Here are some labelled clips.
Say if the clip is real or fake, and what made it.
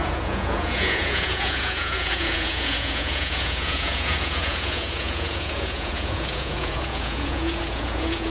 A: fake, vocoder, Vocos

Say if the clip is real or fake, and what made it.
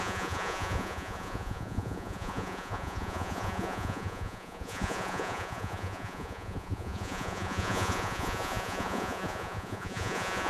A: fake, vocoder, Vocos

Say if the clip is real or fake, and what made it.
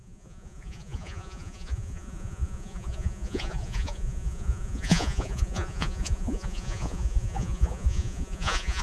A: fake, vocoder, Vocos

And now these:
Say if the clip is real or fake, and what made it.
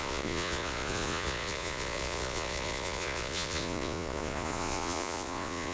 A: fake, vocoder, Vocos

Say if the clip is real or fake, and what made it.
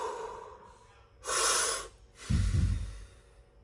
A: real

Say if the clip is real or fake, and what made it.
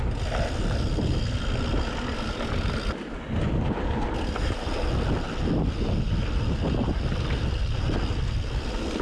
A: real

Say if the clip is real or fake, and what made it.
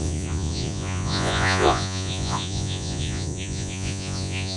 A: fake, vocoder, Vocos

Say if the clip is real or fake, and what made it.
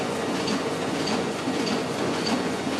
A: fake, vocoder, Vocos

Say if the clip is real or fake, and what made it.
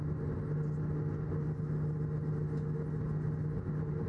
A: real